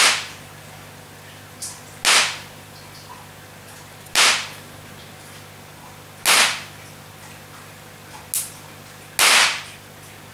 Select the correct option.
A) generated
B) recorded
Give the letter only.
B